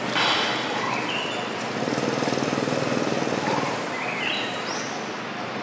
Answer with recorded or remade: recorded